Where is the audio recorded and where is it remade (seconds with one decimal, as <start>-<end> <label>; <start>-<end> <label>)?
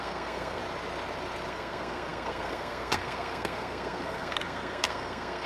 0.0-0.6 remade; 0.6-1.5 recorded; 1.5-5.5 remade